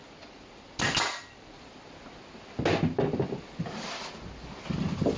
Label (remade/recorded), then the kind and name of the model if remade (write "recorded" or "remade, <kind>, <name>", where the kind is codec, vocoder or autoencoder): recorded